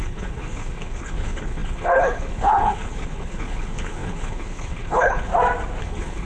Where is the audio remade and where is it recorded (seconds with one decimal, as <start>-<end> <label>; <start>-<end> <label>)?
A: 0.0-5.3 remade; 5.3-5.8 recorded; 5.8-6.3 remade